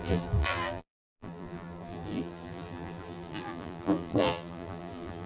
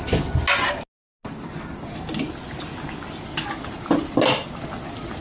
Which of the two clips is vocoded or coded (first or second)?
first